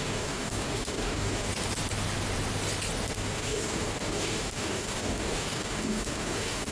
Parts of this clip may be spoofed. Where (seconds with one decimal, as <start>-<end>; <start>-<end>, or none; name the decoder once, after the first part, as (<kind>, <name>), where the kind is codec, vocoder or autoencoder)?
0.0-1.5 (codec, DAC); 3.1-6.7